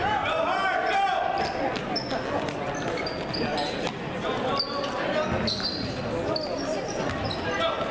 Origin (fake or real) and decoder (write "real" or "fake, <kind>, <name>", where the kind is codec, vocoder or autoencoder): real